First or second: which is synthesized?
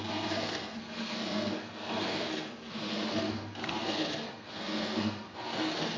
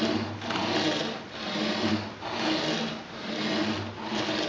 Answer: first